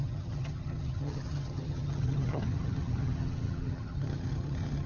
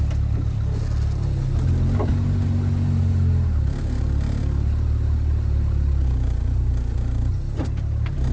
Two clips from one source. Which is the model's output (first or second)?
first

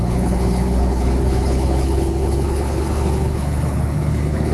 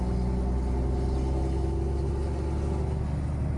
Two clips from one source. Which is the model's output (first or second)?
first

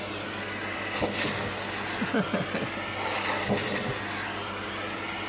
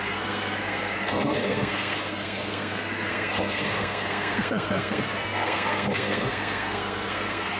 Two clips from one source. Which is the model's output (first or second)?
second